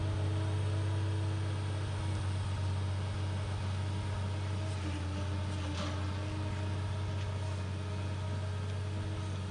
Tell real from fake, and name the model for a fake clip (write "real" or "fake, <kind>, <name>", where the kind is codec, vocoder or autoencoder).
real